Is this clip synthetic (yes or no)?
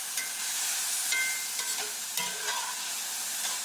no